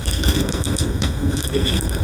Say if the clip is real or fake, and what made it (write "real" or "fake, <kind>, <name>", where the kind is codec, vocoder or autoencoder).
fake, codec, SNAC